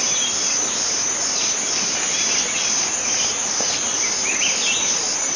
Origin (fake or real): real